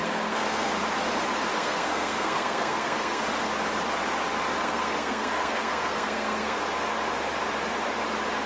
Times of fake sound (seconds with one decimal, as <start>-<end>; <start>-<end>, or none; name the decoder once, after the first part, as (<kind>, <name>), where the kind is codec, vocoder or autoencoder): 0.0-0.7 (codec, SNAC); 1.5-3.2; 4.6-6.6